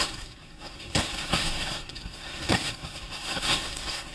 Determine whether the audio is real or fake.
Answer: fake